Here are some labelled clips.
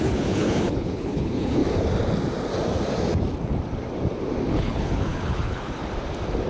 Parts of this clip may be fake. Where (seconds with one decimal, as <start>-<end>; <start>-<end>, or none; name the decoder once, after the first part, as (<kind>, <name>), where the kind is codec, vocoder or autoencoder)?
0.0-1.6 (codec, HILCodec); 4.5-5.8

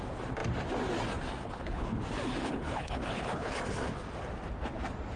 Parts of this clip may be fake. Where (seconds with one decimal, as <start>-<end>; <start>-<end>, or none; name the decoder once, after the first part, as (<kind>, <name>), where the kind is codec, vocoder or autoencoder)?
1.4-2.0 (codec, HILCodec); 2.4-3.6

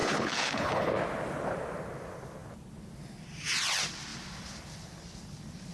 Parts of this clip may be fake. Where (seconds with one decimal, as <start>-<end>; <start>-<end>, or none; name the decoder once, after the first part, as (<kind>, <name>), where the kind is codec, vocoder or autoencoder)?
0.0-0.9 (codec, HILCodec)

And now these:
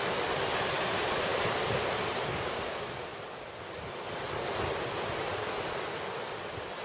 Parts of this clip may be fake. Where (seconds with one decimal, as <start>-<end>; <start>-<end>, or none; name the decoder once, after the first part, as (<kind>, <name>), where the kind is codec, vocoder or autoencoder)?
none